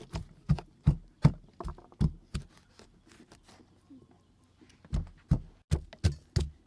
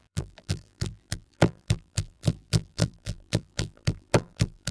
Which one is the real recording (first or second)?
first